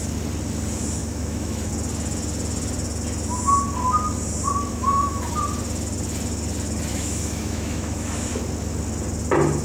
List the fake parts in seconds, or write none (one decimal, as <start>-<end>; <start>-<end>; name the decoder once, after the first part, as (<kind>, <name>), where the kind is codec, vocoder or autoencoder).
1.0-1.7 (autoencoder, DAC-VAE); 4.7-5.3; 6.9-8.3